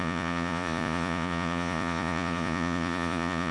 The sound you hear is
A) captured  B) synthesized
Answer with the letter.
B